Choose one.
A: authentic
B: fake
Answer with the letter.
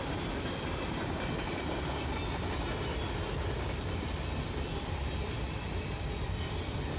A